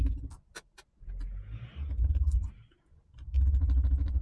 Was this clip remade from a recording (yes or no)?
no